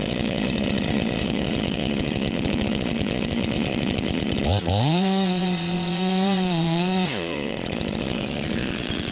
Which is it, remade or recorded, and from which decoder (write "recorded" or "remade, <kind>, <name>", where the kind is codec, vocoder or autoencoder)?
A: remade, vocoder, Vocos